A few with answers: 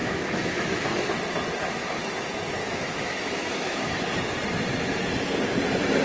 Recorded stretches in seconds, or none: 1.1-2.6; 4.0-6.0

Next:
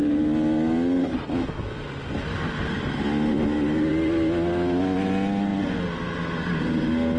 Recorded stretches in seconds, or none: 0.0-7.2